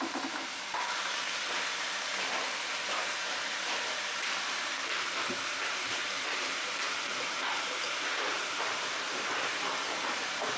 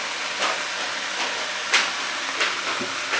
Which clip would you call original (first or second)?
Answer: second